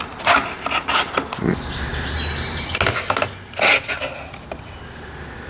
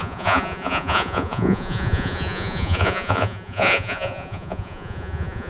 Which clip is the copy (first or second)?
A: second